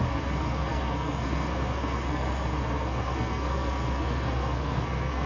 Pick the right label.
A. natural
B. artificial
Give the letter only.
B